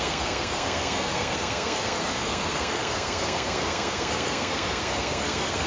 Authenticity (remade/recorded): remade